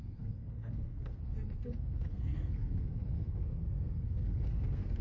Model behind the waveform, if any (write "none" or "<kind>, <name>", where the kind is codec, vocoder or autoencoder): codec, SNAC